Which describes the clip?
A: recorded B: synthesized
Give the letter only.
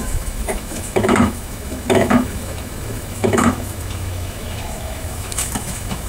B